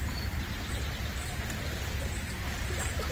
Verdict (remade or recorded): recorded